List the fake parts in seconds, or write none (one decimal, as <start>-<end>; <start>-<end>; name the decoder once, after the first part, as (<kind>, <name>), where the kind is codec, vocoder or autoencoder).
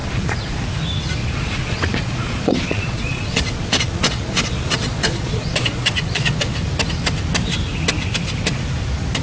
0.0-0.6 (vocoder, Vocos); 1.2-6.4